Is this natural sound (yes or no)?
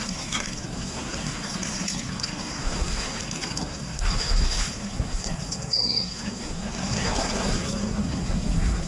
no